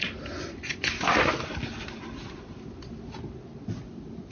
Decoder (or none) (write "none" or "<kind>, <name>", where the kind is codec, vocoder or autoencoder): none